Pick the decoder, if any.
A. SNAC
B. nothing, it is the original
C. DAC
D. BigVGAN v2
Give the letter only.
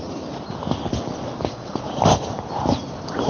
B